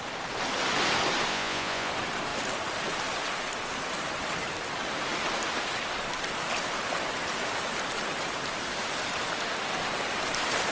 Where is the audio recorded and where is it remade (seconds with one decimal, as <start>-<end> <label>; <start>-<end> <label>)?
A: 0.0-1.3 recorded; 1.3-1.9 remade; 1.9-10.7 recorded